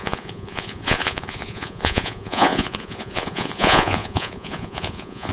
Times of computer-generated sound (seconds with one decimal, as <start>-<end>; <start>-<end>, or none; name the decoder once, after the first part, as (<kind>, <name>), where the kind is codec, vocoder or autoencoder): 0.0-5.3 (vocoder, Vocos)